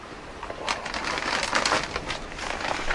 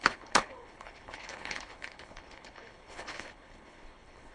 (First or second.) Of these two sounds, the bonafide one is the first